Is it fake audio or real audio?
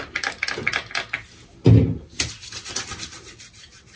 real